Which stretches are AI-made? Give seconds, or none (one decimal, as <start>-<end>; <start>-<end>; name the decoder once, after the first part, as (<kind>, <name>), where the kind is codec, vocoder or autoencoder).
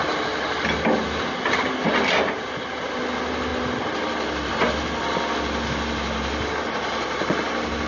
none